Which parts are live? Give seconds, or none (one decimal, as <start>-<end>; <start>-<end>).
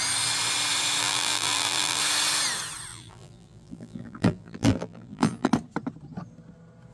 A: 0.0-1.0; 2.0-2.9; 5.5-6.9